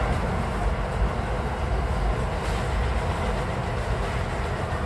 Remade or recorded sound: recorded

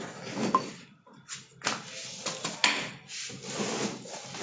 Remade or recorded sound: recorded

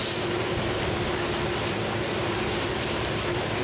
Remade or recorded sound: recorded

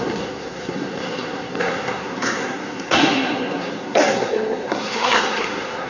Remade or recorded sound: remade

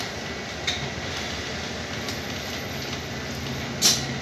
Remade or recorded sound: recorded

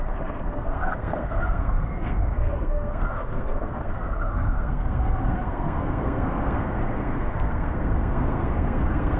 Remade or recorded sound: remade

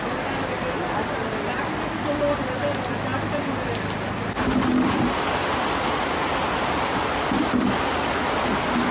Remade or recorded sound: recorded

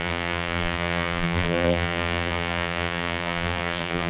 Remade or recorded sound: remade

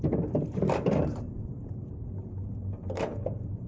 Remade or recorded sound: remade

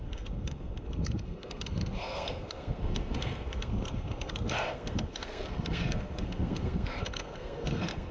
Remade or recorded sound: remade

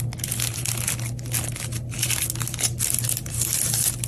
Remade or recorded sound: recorded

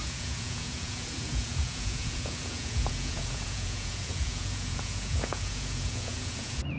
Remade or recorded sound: remade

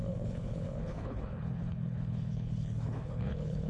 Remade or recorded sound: remade